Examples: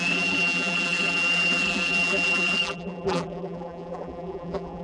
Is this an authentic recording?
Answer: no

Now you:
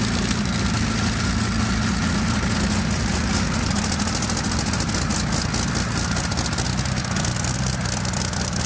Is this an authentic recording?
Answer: yes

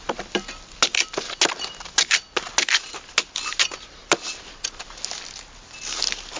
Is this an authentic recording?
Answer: yes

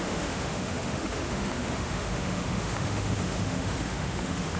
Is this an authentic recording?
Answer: no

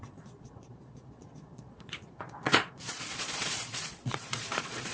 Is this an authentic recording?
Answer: no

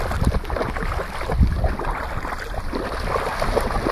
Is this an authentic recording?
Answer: yes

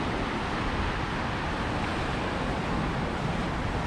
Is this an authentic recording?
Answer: yes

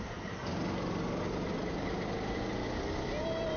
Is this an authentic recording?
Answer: yes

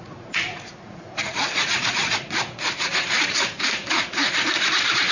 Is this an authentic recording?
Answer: no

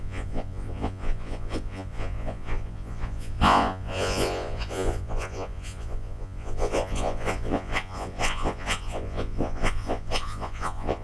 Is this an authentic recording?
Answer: no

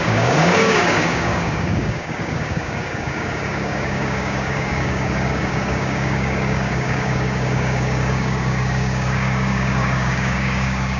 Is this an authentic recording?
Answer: no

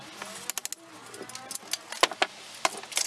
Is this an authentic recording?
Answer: yes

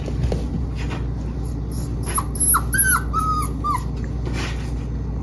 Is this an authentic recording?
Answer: yes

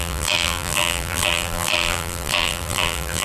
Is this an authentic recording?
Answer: no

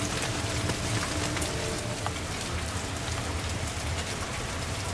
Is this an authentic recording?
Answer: no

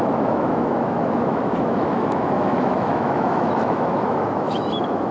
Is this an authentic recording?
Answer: no